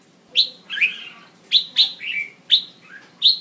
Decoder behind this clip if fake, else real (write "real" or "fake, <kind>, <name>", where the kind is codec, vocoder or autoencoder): real